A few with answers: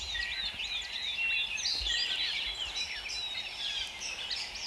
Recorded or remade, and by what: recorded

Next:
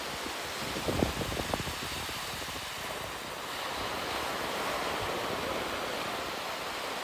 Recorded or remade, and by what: recorded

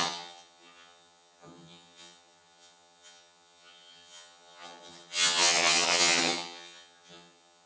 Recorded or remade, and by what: remade, vocoder, HiFi-GAN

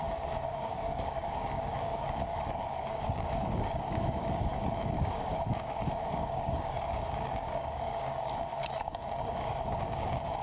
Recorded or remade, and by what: remade, codec, DAC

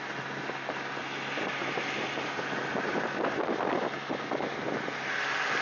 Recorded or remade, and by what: recorded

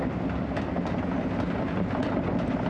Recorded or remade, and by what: recorded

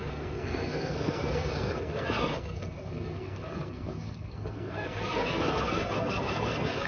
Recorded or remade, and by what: remade, codec, SNAC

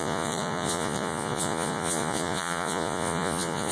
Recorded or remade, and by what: remade, vocoder, Vocos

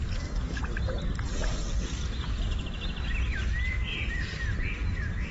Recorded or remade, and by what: recorded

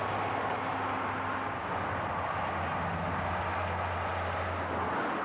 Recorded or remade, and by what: recorded